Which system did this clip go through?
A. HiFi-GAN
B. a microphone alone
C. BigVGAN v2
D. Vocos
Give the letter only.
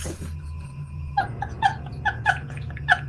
D